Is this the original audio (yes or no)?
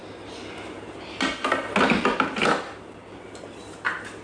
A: yes